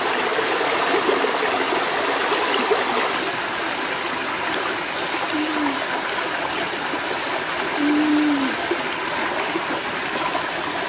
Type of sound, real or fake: real